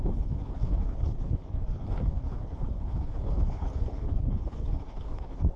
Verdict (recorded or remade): remade